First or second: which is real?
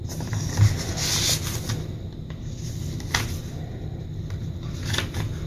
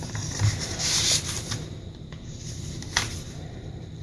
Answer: first